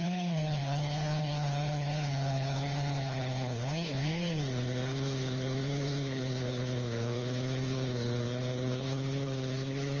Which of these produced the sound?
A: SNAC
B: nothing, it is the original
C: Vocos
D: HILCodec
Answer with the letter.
D